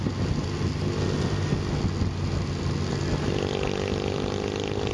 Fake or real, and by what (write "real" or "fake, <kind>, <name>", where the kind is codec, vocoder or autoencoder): real